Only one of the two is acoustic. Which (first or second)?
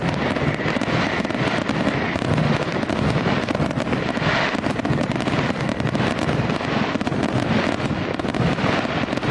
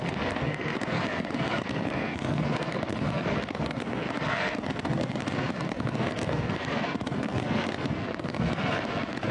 first